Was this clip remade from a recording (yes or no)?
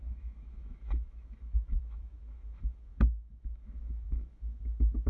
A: yes